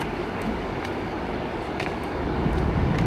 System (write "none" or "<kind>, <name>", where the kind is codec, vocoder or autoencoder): codec, DAC